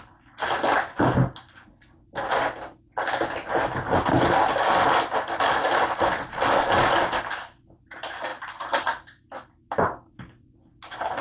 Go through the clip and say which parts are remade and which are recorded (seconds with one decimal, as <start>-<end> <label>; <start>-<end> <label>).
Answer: 0.0-11.2 recorded